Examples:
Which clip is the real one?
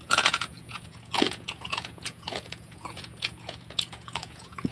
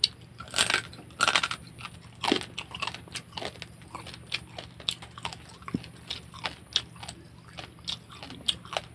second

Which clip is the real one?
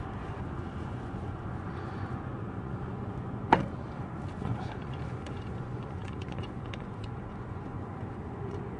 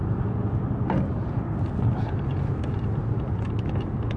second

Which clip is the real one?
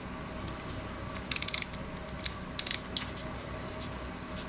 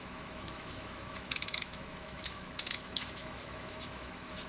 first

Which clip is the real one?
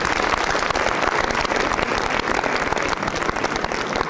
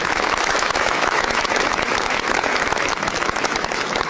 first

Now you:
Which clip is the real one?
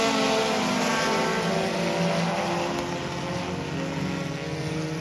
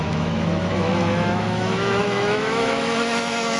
first